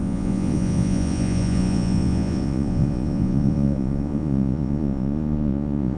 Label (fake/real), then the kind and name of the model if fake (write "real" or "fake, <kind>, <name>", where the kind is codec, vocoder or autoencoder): fake, vocoder, Vocos